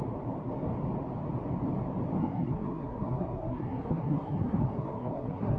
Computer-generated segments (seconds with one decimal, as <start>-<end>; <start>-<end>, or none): 2.2-5.6